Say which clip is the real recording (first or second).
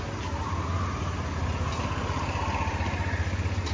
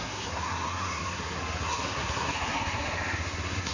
first